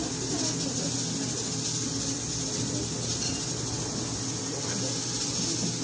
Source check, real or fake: real